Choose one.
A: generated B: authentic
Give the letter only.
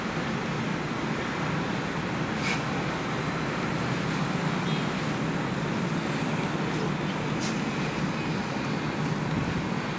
B